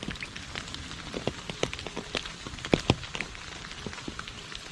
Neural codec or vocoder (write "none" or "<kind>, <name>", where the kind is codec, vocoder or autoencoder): vocoder, BigVGAN v2